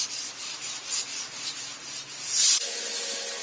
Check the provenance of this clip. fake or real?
real